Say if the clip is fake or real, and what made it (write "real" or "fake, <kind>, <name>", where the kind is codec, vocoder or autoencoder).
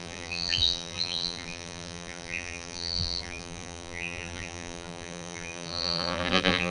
fake, vocoder, BigVGAN v2